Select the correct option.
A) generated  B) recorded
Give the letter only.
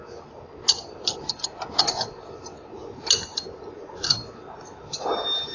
B